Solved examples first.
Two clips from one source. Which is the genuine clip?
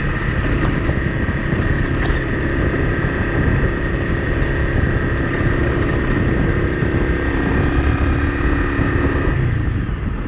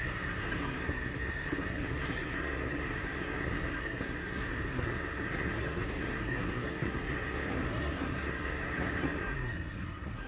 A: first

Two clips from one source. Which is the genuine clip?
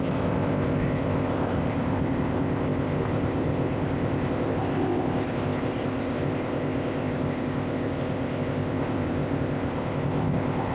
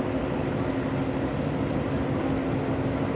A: second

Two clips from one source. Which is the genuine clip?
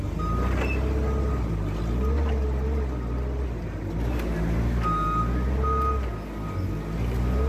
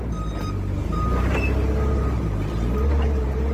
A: first